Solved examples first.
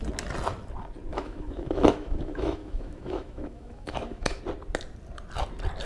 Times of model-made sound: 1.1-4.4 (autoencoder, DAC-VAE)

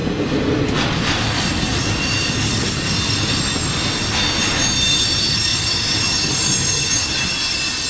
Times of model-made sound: none

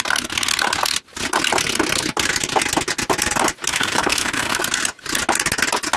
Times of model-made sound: 3.7-4.6 (autoencoder, DAC-VAE)